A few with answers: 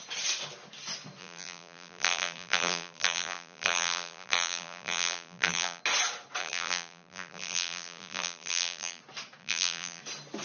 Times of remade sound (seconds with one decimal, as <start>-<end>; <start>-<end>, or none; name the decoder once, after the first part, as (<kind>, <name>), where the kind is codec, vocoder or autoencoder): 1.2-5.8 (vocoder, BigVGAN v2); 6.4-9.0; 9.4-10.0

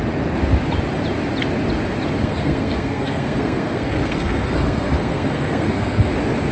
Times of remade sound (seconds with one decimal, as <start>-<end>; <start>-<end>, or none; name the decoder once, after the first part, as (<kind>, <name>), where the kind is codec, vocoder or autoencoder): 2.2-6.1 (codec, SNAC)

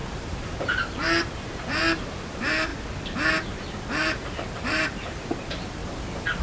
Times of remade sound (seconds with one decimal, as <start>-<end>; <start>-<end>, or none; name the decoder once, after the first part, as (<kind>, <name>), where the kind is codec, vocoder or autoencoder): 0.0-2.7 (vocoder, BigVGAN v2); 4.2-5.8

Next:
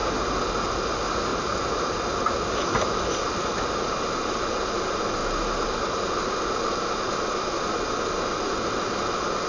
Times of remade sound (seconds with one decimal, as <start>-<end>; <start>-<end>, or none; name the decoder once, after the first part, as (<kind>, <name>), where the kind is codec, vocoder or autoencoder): 1.3-2.0 (vocoder, BigVGAN v2)

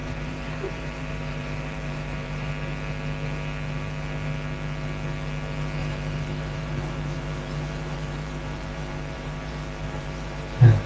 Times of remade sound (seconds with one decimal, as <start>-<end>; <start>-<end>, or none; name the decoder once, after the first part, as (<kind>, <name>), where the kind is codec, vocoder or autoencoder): 0.0-2.5 (vocoder, BigVGAN v2); 5.8-10.9

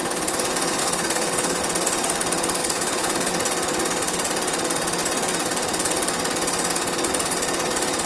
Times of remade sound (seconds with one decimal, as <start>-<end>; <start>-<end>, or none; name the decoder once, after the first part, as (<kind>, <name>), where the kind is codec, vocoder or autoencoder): 0.8-1.6 (codec, HILCodec); 2.6-3.3

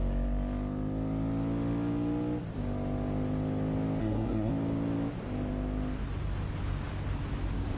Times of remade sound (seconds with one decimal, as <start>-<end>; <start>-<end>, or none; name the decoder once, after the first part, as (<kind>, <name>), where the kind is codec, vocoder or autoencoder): 4.0-4.5 (codec, SNAC)